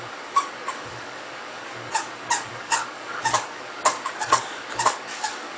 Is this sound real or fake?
fake